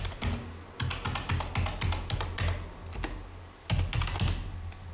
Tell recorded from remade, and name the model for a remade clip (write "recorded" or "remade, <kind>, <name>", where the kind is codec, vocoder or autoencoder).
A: recorded